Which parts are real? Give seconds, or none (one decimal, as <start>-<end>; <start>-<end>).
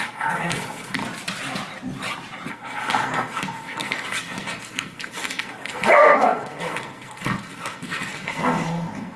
1.0-2.5